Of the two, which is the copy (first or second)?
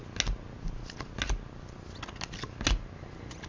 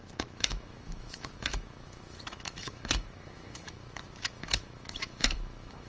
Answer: second